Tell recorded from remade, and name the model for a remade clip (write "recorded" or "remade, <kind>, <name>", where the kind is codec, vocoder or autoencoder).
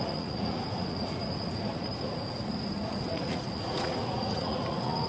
remade, vocoder, Vocos